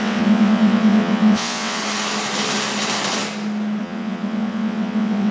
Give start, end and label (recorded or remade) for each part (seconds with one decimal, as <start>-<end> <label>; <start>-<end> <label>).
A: 0.0-1.8 remade; 1.8-3.8 recorded; 3.8-5.3 remade